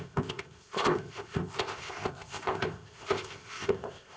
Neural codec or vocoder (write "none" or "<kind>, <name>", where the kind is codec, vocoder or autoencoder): codec, ZipCodec